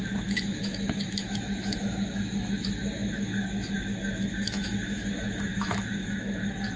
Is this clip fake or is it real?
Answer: fake